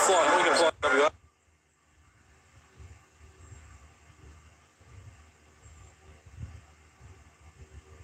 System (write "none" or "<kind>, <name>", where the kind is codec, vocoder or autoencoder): none